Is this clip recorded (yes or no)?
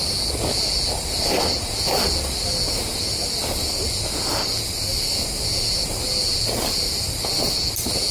yes